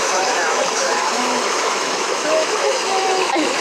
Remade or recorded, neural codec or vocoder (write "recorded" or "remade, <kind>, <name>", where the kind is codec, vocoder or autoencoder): remade, autoencoder, DAC-VAE